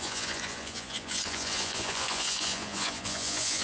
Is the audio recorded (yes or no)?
no